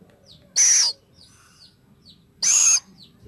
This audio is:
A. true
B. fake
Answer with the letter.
A